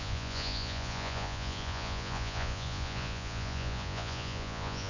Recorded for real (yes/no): no